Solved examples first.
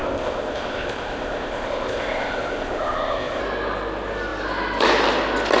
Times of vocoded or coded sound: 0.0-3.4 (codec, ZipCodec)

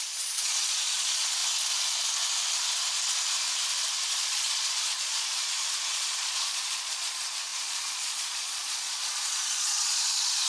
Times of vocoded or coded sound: 0.0-1.4 (vocoder, Vocos); 4.1-10.5

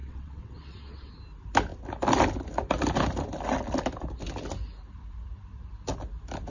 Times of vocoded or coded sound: 0.0-1.1 (vocoder, WaveNeXt)

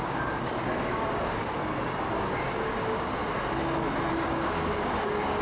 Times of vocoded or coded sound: 0.0-1.6 (codec, DAC); 2.1-3.2; 4.1-5.4

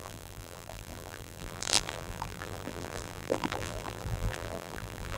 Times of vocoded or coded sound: 0.0-5.2 (vocoder, BigVGAN v2)

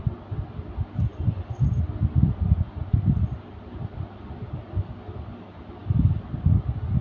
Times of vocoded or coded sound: none

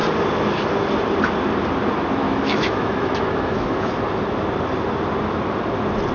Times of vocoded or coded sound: 2.2-3.9 (autoencoder, DAC-VAE)

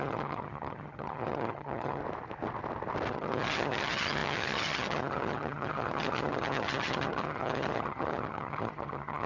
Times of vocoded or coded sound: 0.0-2.0 (vocoder, HiFi-GAN); 3.1-9.3